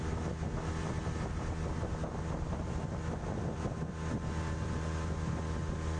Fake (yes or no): no